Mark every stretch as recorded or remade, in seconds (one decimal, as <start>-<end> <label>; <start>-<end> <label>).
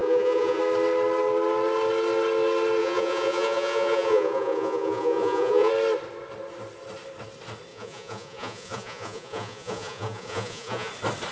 0.0-0.6 remade; 0.6-2.8 recorded; 2.8-5.7 remade; 5.7-7.7 recorded; 7.7-10.9 remade; 10.9-11.3 recorded